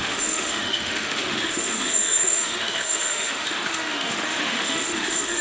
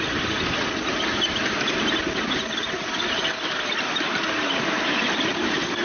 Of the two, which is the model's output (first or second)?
first